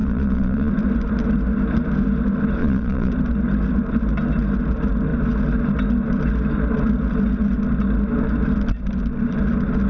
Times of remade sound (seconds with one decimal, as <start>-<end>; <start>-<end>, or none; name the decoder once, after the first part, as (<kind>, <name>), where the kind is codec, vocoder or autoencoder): 0.0-0.7 (vocoder, Vocos); 2.6-3.1

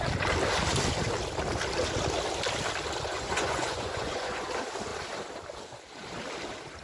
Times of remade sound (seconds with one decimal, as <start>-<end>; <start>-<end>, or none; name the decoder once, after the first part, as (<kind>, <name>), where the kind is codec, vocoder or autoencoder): 3.1-4.5 (vocoder, Vocos)